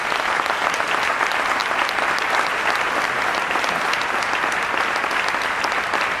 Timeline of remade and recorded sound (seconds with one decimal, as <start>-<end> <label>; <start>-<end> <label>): 0.0-6.2 recorded